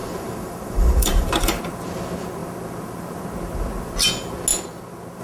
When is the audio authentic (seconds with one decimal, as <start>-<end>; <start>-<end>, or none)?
1.6-5.2